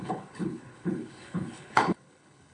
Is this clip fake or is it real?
fake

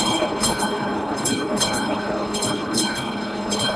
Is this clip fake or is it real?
fake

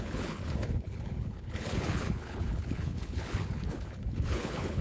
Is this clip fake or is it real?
fake